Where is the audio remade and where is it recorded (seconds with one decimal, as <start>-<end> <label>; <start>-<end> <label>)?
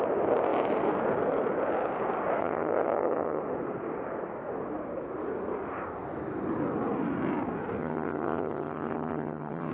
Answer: 0.0-2.4 recorded; 2.4-3.4 remade; 3.4-7.8 recorded; 7.8-9.7 remade